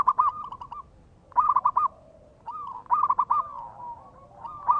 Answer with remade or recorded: recorded